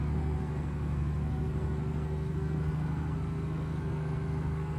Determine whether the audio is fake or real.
fake